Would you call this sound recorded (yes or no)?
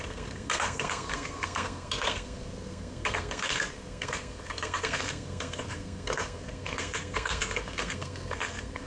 no